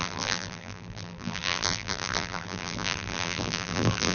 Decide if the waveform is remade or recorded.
remade